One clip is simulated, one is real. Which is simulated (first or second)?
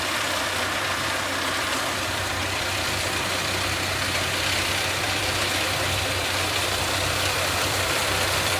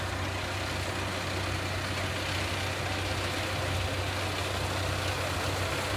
first